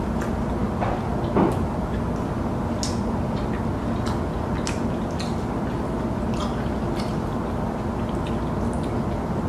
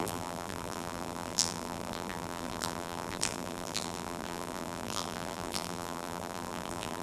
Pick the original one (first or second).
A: first